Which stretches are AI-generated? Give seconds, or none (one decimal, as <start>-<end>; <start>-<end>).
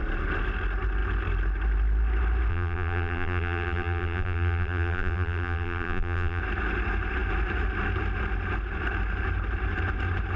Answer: 2.5-6.4